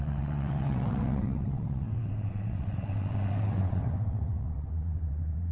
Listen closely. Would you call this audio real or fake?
fake